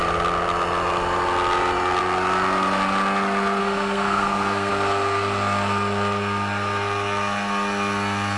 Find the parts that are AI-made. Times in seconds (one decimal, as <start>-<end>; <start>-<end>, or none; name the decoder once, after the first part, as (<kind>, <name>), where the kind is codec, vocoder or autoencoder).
3.6-4.7 (codec, SNAC)

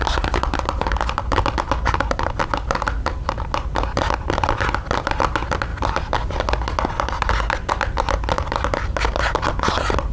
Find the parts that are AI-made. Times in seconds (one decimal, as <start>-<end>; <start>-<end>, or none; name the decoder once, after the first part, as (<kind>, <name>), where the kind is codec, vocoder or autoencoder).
none

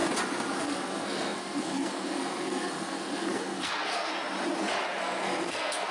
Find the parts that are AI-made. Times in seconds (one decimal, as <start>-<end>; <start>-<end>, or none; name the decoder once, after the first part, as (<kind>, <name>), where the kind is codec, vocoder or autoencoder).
0.6-4.1 (codec, SNAC); 5.0-5.9

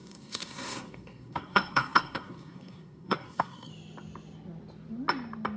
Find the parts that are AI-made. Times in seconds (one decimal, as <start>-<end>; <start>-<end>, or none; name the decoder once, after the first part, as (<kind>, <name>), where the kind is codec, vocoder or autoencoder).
0.0-3.7 (codec, SNAC)

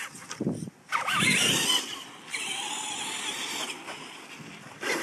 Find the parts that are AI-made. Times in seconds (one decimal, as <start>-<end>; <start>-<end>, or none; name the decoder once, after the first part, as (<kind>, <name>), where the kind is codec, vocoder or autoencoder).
none

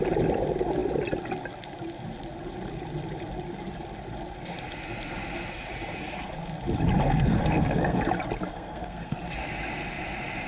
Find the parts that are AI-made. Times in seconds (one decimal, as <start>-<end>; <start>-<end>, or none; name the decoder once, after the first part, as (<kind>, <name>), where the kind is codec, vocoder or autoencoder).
7.0-8.0 (codec, SNAC); 8.5-9.2